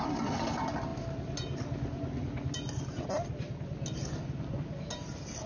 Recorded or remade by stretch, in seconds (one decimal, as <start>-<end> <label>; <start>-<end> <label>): 0.0-5.5 recorded